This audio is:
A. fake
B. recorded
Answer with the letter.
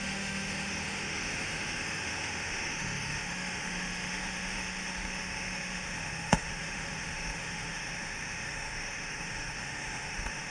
A